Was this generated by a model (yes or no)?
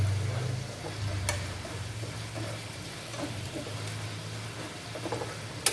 no